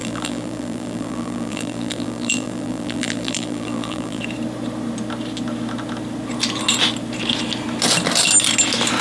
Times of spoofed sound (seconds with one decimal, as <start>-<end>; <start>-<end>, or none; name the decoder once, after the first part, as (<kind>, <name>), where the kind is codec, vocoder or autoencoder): 0.0-4.2 (vocoder, BigVGAN v2)